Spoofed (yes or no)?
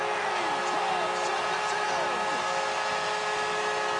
no